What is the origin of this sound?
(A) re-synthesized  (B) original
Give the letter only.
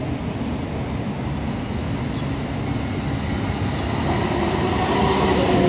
B